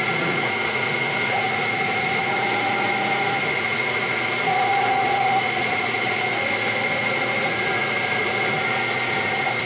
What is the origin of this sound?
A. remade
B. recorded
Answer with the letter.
A